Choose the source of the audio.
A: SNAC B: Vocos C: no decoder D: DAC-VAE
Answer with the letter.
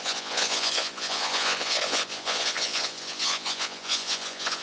B